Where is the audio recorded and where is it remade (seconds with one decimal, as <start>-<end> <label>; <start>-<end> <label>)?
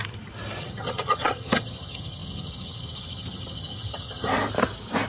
0.0-0.6 recorded; 0.6-4.3 remade; 4.3-5.1 recorded